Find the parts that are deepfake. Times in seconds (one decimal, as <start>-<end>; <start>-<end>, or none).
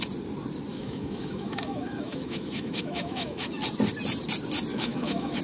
0.7-3.5; 4.7-5.4